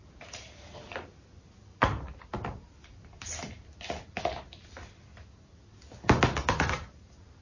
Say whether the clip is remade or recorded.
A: recorded